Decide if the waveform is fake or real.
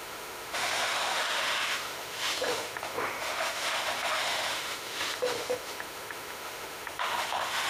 fake